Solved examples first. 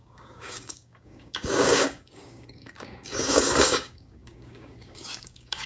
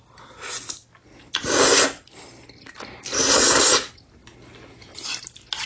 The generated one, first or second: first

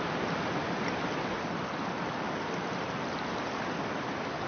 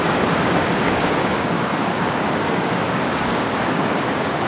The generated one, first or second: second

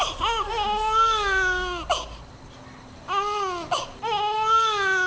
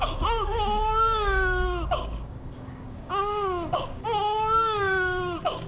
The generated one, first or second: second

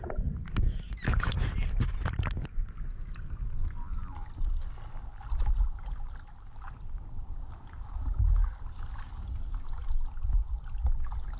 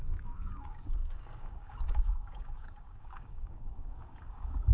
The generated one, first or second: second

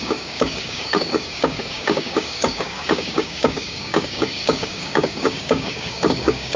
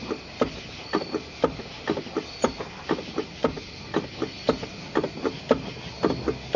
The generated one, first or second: first